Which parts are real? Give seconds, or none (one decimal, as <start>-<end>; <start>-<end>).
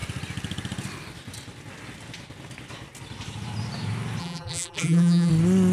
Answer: 0.0-4.2; 5.3-5.7